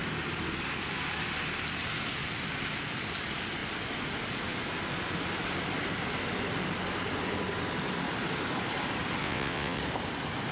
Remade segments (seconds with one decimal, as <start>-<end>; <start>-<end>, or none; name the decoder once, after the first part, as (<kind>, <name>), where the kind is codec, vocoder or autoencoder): 9.2-9.8 (vocoder, WaveNeXt)

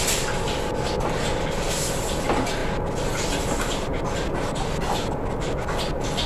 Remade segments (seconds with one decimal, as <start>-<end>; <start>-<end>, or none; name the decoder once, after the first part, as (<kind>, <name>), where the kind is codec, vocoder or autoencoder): none

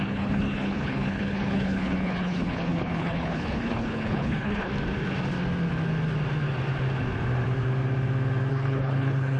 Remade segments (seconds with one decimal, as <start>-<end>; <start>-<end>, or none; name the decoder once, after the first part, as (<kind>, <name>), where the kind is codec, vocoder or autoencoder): 0.0-4.7 (codec, HILCodec); 8.5-9.4

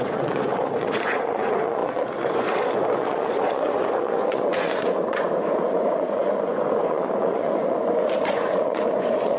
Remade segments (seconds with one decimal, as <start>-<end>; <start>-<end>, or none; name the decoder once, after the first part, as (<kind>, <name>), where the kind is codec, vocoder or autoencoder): 0.0-9.4 (vocoder, Vocos)